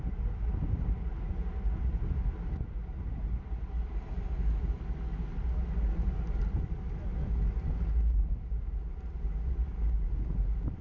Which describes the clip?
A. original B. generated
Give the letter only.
A